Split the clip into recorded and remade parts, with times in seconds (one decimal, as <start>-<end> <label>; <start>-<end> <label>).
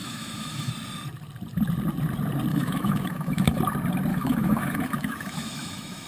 0.0-0.7 remade; 0.7-2.5 recorded; 2.5-3.6 remade; 3.6-4.1 recorded; 4.1-6.1 remade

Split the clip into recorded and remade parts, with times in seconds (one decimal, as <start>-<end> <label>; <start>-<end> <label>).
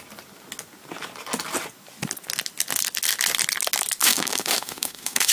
0.0-4.0 recorded; 4.0-5.3 remade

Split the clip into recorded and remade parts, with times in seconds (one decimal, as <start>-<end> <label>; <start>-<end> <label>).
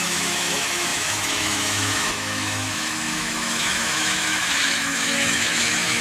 0.0-6.0 remade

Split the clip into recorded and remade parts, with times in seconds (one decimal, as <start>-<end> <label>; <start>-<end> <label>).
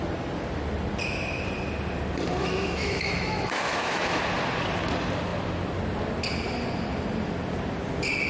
0.0-2.4 recorded; 2.4-4.2 remade; 4.2-8.3 recorded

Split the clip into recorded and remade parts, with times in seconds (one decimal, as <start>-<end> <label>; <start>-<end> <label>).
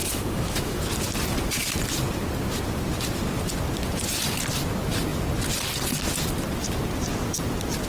0.0-0.8 remade; 0.8-7.9 recorded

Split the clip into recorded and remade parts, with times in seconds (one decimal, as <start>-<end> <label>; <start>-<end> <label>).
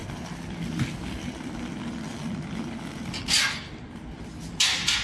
0.0-5.0 recorded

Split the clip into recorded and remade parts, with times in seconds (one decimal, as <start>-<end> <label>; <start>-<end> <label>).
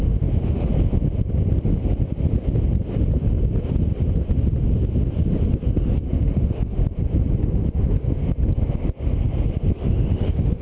0.0-0.7 remade; 0.7-5.6 recorded; 5.6-6.8 remade; 6.8-7.4 recorded; 7.4-8.2 remade; 8.2-9.7 recorded; 9.7-10.6 remade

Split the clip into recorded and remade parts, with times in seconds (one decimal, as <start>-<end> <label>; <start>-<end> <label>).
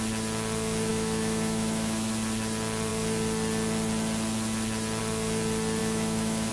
0.0-0.9 recorded; 0.9-2.1 remade; 2.1-5.8 recorded; 5.8-6.5 remade